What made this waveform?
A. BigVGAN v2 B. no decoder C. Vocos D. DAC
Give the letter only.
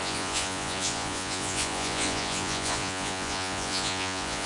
C